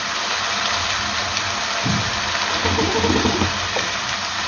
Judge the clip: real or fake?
real